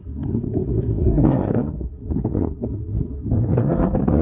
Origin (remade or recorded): remade